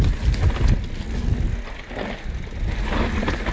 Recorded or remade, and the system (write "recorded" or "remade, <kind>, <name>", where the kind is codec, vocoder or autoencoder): recorded